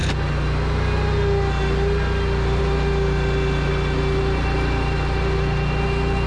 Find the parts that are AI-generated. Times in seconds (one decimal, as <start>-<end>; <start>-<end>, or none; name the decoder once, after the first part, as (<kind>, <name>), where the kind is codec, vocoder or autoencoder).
none